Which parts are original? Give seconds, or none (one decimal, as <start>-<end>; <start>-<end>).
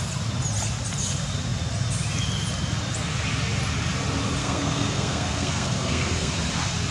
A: 0.0-4.4; 6.3-6.9